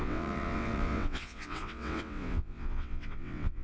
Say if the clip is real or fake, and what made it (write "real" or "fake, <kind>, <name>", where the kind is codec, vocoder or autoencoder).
fake, vocoder, WaveNeXt